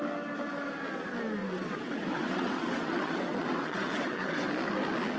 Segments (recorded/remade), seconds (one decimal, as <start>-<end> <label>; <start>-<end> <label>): 0.0-1.4 recorded; 1.4-4.5 remade; 4.5-5.2 recorded

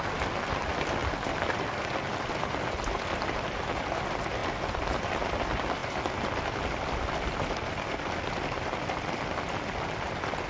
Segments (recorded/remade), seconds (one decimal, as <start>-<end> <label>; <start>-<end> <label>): 0.0-10.5 recorded

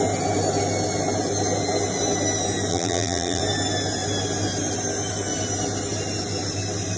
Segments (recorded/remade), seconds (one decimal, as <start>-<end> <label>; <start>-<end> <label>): 0.0-2.7 recorded; 2.7-3.4 remade; 3.4-7.0 recorded

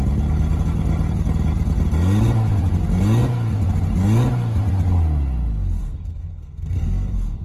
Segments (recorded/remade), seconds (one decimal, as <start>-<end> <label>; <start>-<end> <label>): 0.0-5.8 recorded; 5.8-7.4 remade

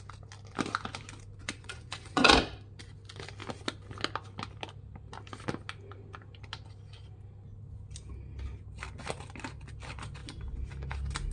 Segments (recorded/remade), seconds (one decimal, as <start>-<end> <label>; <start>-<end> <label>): 0.0-1.4 recorded; 1.4-2.3 remade; 2.3-11.3 recorded

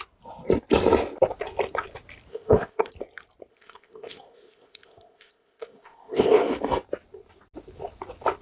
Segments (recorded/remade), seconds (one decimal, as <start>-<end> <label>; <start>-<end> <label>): 0.0-2.3 recorded; 2.3-2.9 remade; 2.9-3.5 recorded; 3.5-6.5 remade; 6.5-8.4 recorded